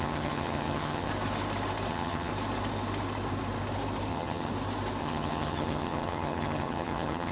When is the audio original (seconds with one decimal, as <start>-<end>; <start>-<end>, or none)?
1.1-1.9; 2.3-4.1; 4.5-5.0